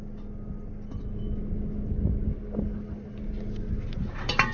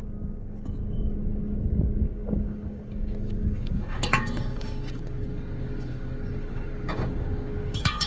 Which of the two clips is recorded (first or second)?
first